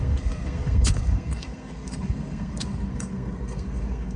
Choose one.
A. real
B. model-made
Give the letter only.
B